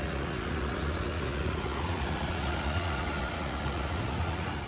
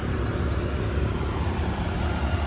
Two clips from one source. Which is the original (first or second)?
second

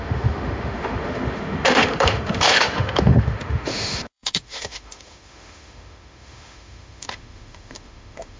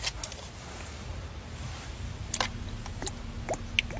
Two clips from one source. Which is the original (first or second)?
second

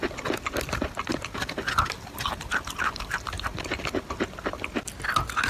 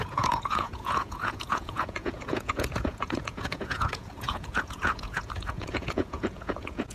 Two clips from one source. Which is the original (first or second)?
first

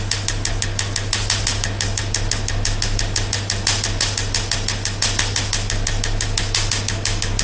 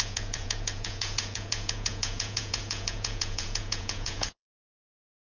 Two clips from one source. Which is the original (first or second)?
first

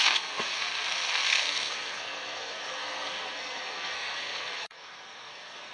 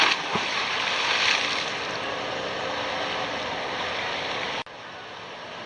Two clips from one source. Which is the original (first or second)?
second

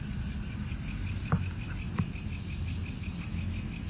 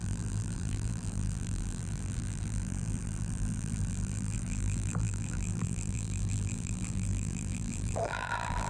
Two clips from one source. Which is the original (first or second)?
first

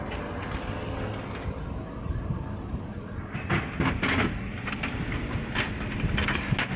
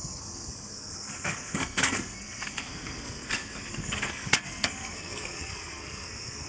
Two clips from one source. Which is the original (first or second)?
first